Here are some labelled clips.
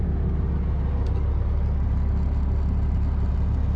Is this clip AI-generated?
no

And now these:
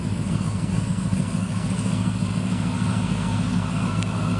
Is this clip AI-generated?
yes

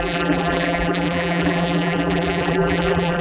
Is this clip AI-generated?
yes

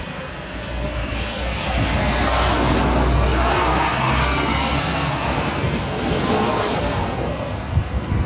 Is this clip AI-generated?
yes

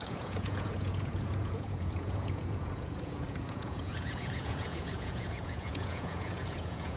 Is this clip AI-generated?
yes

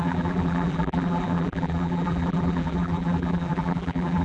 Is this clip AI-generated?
yes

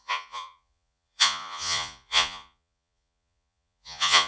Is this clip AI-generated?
yes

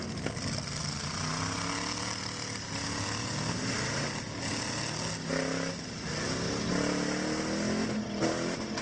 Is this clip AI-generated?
no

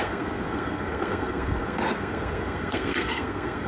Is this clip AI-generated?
yes